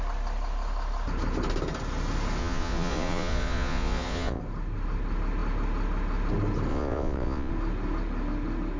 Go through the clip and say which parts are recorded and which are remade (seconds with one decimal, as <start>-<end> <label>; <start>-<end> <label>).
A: 0.0-2.4 recorded; 2.4-4.4 remade; 4.4-6.7 recorded; 6.7-7.5 remade; 7.5-8.8 recorded